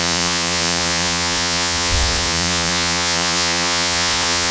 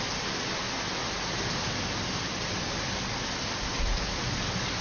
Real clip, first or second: second